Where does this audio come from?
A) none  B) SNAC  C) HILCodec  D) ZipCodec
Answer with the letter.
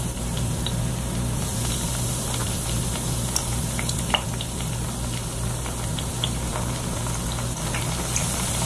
A